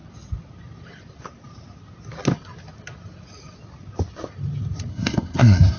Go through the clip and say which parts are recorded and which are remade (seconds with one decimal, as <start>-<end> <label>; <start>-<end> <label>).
0.0-4.9 recorded; 4.9-5.8 remade